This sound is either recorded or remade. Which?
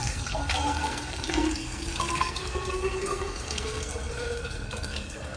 remade